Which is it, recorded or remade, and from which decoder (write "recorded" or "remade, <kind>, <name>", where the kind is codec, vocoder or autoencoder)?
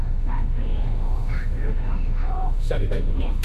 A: remade, autoencoder, DAC-VAE